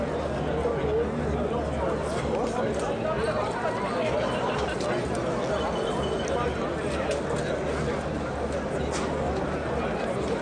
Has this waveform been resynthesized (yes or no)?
no